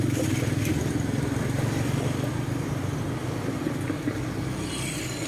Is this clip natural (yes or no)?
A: yes